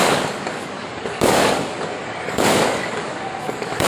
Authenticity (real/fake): fake